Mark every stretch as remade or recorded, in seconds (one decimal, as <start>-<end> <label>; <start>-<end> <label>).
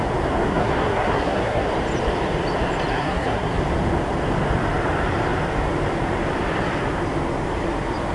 0.0-0.5 recorded; 0.5-1.7 remade; 1.7-2.9 recorded; 2.9-3.5 remade; 3.5-8.1 recorded